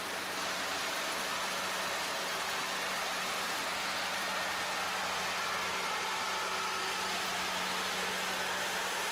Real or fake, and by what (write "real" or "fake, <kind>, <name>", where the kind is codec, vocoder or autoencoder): real